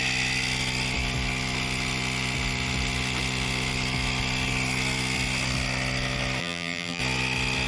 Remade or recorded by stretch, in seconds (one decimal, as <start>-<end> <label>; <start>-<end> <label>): 0.0-6.4 recorded; 6.4-7.0 remade; 7.0-7.7 recorded